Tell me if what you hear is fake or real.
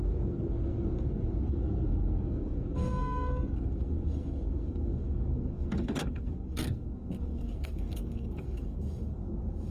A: fake